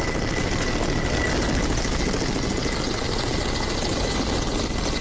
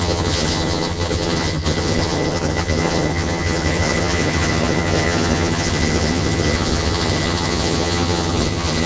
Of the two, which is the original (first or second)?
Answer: first